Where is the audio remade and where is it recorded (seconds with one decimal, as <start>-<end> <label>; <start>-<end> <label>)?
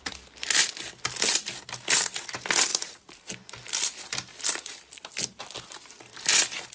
0.0-6.7 recorded